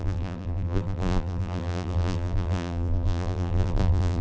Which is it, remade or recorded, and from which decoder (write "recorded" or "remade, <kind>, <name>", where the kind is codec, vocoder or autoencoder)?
remade, vocoder, BigVGAN v2